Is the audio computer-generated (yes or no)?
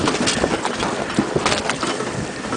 no